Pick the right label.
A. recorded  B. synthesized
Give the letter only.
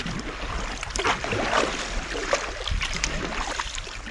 A